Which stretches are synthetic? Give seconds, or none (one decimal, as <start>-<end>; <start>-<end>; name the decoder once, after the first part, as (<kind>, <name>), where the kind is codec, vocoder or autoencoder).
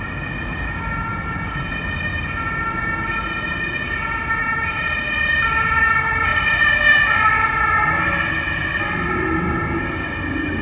1.1-1.7 (vocoder, BigVGAN v2)